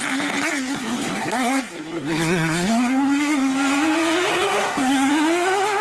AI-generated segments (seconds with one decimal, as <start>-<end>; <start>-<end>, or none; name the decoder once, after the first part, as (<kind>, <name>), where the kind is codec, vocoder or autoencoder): 0.6-3.5 (codec, SNAC); 4.3-5.1